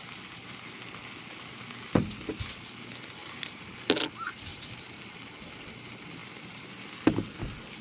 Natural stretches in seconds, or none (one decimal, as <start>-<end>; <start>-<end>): 0.0-3.2; 3.7-4.5; 5.0-6.2; 6.7-7.8